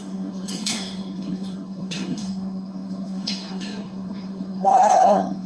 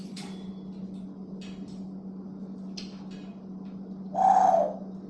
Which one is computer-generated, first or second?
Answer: first